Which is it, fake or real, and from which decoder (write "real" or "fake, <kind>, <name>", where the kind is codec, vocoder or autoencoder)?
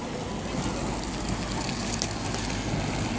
real